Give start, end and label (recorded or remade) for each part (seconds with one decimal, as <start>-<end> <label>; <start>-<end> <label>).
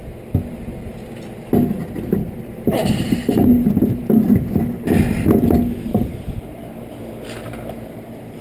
0.0-2.2 recorded; 2.2-4.8 remade; 4.8-5.9 recorded; 5.9-7.0 remade; 7.0-8.4 recorded